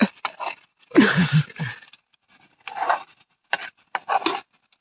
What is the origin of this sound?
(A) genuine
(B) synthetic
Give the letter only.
A